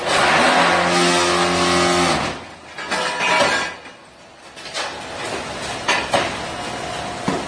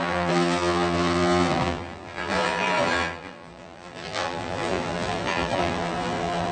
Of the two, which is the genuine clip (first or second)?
first